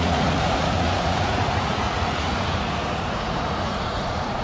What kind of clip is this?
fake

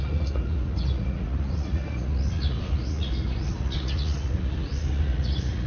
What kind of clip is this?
fake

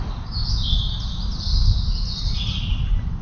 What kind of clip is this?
real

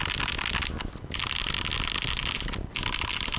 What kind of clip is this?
real